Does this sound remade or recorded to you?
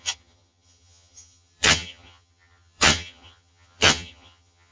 remade